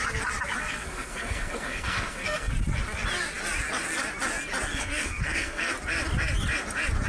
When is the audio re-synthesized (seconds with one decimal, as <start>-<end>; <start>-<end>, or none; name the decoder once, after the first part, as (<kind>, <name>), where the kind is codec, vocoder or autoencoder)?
0.6-2.5 (codec, SNAC); 4.7-5.7